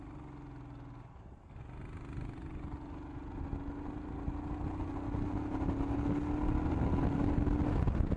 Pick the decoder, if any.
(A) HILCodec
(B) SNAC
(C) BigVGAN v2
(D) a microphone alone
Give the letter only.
D